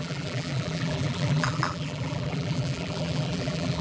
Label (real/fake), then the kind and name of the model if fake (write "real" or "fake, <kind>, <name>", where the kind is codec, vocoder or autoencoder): fake, vocoder, BigVGAN v2